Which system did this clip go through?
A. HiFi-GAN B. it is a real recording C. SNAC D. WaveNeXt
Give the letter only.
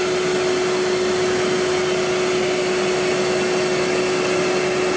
B